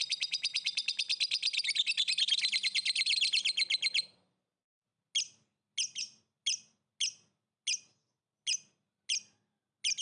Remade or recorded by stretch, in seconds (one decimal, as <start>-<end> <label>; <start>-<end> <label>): 0.0-10.0 recorded

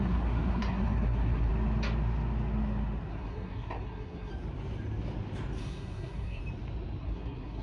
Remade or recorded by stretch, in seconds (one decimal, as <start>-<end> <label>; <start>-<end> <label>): 0.0-1.5 remade; 1.5-3.1 recorded; 3.1-4.3 remade; 4.3-5.6 recorded; 5.6-6.4 remade; 6.4-7.0 recorded; 7.0-7.6 remade